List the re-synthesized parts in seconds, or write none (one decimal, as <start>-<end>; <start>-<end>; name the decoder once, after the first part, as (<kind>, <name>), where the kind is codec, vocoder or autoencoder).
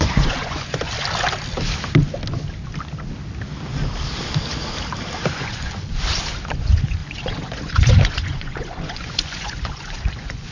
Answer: 0.0-0.9 (vocoder, Vocos); 5.3-5.9; 6.5-10.5